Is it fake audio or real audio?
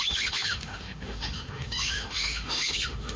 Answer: fake